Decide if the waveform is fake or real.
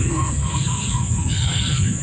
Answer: fake